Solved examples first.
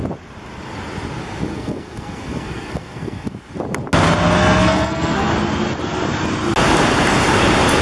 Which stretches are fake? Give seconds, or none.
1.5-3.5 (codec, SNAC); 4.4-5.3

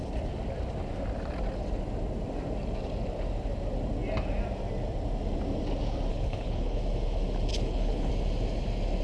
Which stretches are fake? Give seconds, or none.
6.1-6.8 (codec, HILCodec); 7.5-8.1

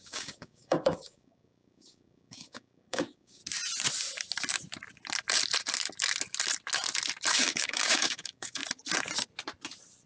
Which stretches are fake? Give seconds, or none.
0.0-3.4 (codec, DAC); 7.3-8.6

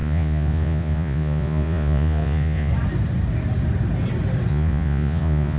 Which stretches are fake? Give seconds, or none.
0.0-2.7 (vocoder, Vocos); 4.5-5.6

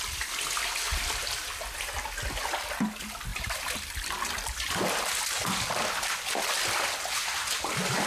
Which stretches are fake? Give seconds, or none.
none

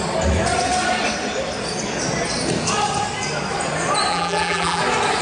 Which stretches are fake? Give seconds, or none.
4.1-4.8 (vocoder, BigVGAN v2)

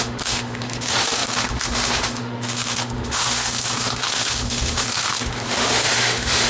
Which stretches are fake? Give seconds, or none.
0.0-6.5 (autoencoder, DAC-VAE)

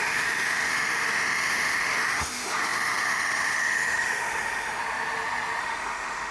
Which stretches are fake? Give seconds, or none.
0.0-4.8 (autoencoder, DAC-VAE); 5.6-6.3